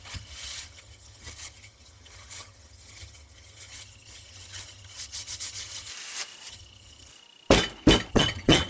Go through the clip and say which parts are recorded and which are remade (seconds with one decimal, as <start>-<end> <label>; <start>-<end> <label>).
0.0-5.9 remade; 5.9-6.5 recorded; 6.5-7.1 remade; 7.1-8.1 recorded; 8.1-8.7 remade